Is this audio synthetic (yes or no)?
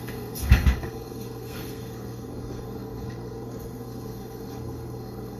yes